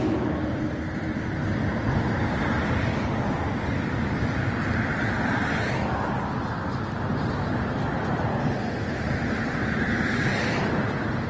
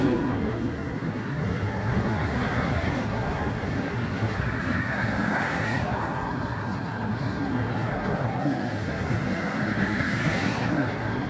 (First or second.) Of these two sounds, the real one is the first